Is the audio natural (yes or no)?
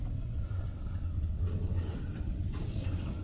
no